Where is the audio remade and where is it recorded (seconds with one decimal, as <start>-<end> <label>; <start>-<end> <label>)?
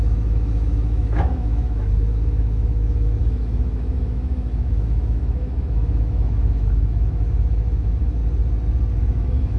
0.0-8.2 remade; 8.2-9.0 recorded; 9.0-9.6 remade